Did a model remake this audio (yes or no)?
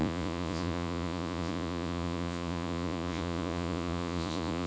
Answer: yes